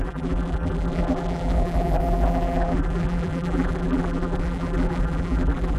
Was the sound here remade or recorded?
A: remade